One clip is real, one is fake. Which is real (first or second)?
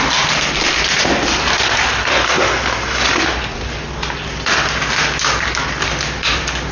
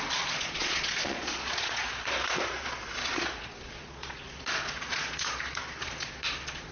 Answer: first